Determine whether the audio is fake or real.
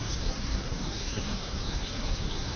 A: fake